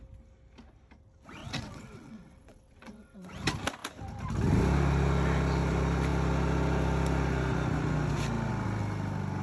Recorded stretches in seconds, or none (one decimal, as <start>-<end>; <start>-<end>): 0.0-1.4; 3.3-9.4

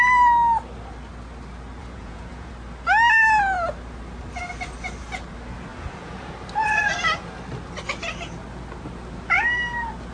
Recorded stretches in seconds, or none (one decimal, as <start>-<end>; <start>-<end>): 0.0-1.8; 2.5-5.7; 6.3-10.1